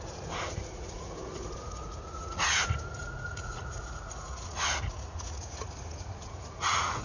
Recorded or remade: remade